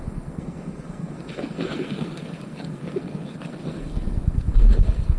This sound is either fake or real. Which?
fake